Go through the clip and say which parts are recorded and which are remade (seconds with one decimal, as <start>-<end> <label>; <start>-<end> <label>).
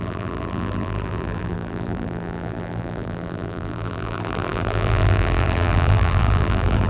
0.0-6.9 remade